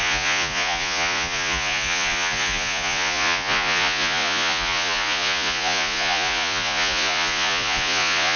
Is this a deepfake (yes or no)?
yes